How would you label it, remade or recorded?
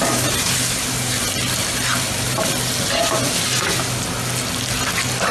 recorded